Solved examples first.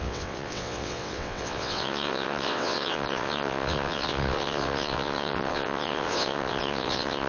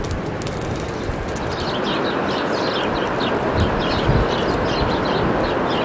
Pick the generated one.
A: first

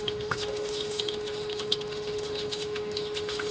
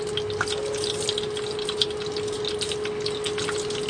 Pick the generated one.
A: first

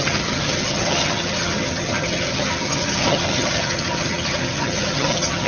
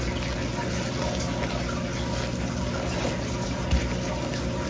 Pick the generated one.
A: first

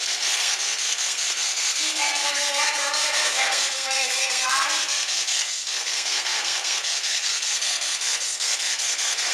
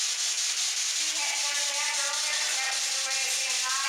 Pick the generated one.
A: first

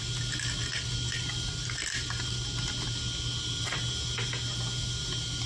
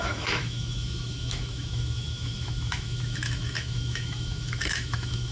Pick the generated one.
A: second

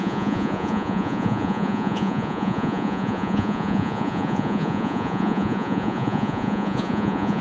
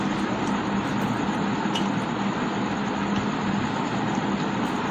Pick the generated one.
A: first